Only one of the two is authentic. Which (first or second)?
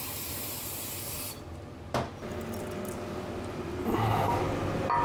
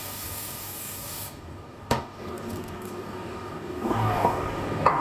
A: first